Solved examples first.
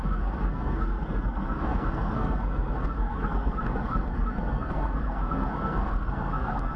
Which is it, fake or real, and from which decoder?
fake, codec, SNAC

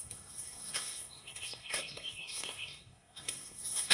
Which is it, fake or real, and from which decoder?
fake, codec, SNAC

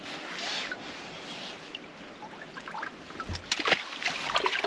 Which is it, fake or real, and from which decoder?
real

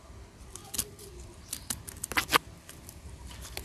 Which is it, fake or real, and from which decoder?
real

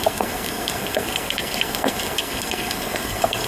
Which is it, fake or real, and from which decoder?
fake, codec, SNAC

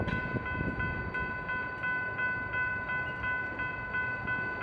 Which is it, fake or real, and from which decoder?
real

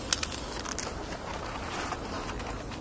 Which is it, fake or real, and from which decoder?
real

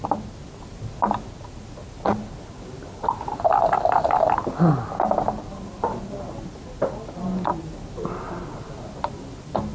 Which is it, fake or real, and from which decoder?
real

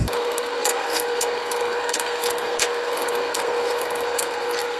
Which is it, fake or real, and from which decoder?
fake, codec, SNAC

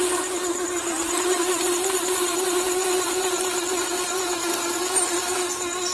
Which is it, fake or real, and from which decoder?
real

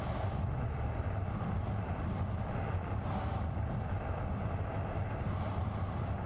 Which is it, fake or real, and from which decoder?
real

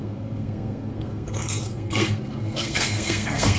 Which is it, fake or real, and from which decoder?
fake, codec, SNAC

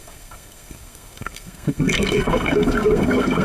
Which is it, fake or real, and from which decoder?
fake, codec, SNAC